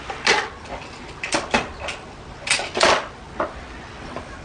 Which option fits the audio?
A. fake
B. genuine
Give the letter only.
B